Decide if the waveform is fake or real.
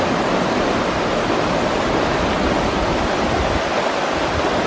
real